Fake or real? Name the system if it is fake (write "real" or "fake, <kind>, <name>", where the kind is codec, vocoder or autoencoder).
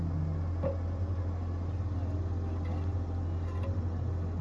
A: real